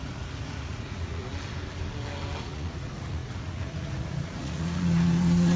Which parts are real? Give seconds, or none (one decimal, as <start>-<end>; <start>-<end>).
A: 1.2-2.4